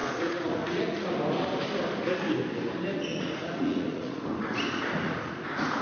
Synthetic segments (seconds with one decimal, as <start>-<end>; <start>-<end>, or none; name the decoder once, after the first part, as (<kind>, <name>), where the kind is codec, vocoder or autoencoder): 0.0-1.1 (vocoder, Vocos); 3.1-5.8